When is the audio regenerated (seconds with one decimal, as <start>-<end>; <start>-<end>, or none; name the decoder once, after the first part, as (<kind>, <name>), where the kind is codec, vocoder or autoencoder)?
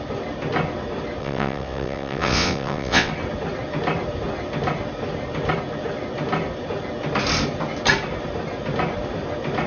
1.2-3.1 (vocoder, WaveNeXt)